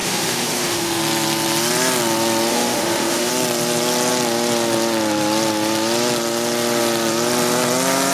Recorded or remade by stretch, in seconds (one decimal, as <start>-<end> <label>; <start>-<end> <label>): 0.0-1.0 remade; 1.0-2.5 recorded; 2.5-3.3 remade; 3.3-8.1 recorded